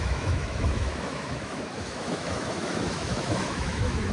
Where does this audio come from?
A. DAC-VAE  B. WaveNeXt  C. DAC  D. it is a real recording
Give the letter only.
A